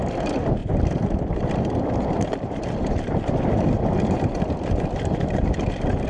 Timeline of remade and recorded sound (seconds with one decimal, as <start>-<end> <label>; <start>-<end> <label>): 0.0-0.6 recorded; 0.6-2.9 remade; 2.9-6.1 recorded